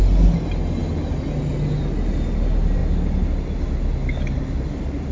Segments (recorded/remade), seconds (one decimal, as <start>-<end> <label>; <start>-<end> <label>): 0.0-5.1 recorded